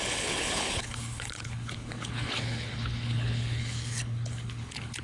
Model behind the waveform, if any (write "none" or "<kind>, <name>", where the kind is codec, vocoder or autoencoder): codec, HILCodec